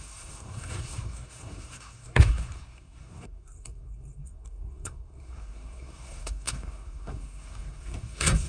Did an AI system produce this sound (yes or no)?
yes